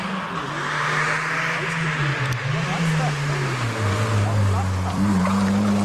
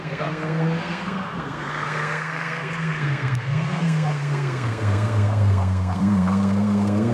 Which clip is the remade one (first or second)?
second